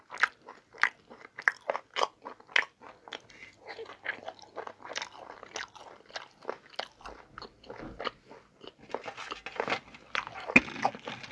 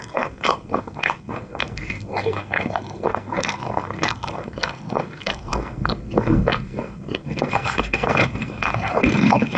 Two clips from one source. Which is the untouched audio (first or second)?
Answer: first